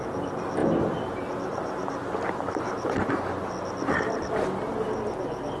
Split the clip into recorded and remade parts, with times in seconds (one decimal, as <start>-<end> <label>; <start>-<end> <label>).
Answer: 0.0-5.6 recorded